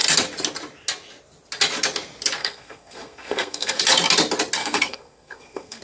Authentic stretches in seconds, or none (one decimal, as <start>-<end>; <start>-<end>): 0.0-2.4; 3.8-4.6